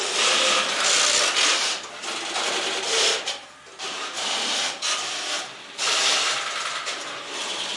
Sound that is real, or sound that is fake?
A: real